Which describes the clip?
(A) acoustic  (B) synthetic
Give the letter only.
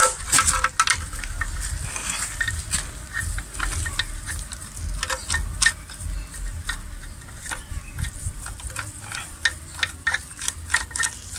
A